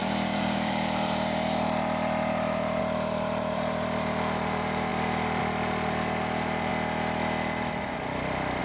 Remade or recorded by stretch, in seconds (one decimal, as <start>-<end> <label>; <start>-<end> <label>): 0.0-6.7 remade; 6.7-8.6 recorded

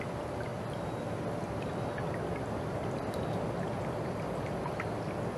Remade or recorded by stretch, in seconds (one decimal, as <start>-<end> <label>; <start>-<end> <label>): 0.0-5.4 recorded

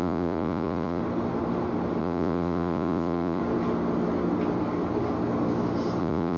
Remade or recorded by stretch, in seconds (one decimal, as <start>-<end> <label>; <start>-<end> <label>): 0.0-1.0 remade; 1.0-2.0 recorded; 2.0-3.4 remade; 3.4-6.0 recorded; 6.0-6.4 remade